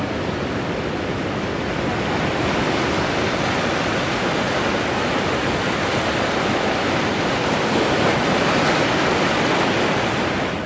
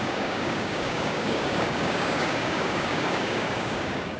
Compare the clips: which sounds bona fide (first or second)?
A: first